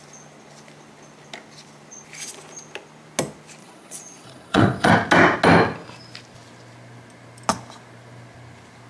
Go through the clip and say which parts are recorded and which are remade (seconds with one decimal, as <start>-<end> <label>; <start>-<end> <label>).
0.0-3.6 recorded; 3.6-4.9 remade; 4.9-8.9 recorded